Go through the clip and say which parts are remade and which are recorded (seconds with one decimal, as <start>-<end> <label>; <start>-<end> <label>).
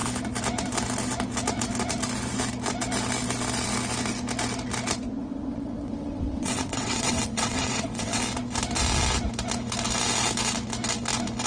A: 0.0-5.2 recorded; 5.2-8.2 remade; 8.2-11.5 recorded